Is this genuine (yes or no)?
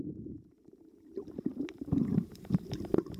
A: no